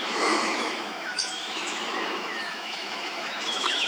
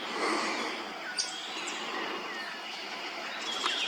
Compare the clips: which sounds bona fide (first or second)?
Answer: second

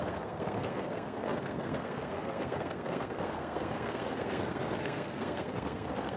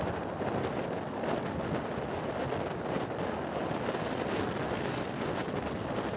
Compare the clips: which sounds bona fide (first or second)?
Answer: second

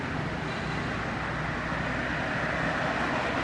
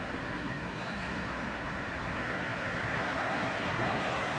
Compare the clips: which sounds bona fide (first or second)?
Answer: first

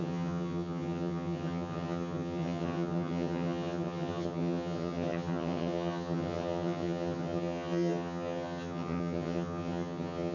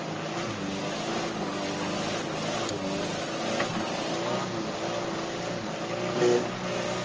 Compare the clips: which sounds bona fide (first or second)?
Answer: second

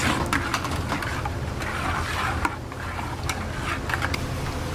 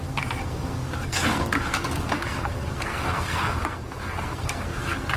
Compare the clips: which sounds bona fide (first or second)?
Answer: first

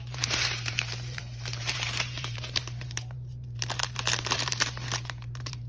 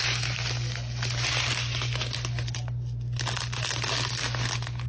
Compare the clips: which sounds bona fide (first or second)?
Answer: second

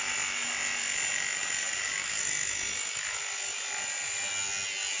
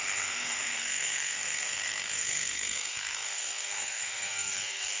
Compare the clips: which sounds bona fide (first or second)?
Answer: first